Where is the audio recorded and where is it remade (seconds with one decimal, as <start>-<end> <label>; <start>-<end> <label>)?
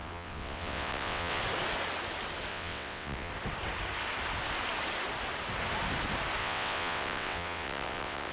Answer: 0.0-1.4 remade; 1.4-2.5 recorded; 2.5-3.3 remade; 3.3-6.4 recorded; 6.4-8.3 remade